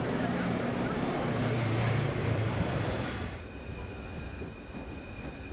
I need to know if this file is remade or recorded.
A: recorded